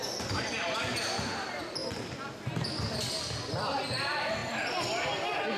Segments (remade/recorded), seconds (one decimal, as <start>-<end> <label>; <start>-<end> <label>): 0.0-5.6 recorded

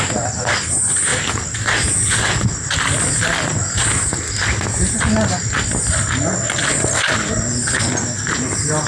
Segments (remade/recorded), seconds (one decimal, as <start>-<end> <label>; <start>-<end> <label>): 0.0-8.9 recorded

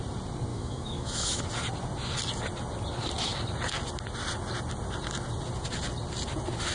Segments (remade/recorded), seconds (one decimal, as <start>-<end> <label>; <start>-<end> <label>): 0.0-0.5 recorded; 0.5-1.4 remade; 1.4-6.7 recorded

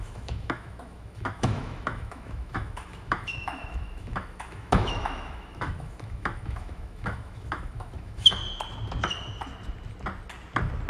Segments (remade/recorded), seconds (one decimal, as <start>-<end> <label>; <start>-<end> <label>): 0.0-8.4 remade; 8.4-10.9 recorded

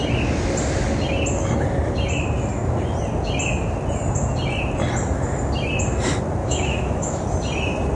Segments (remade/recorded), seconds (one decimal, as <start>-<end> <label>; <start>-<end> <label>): 0.0-6.4 recorded; 6.4-7.2 remade; 7.2-7.9 recorded

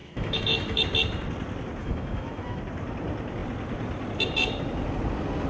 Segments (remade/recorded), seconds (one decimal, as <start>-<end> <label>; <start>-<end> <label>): 0.0-0.8 remade; 0.8-1.8 recorded; 1.8-2.6 remade; 2.6-5.5 recorded

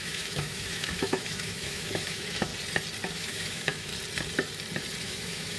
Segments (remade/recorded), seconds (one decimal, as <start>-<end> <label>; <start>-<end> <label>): 0.0-2.5 remade; 2.5-3.1 recorded; 3.1-3.9 remade; 3.9-5.0 recorded; 5.0-5.6 remade

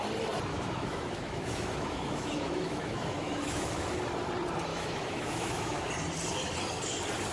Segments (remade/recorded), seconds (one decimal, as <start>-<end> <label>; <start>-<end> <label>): 0.0-0.5 recorded; 0.5-4.0 remade; 4.0-4.7 recorded; 4.7-5.9 remade; 5.9-7.3 recorded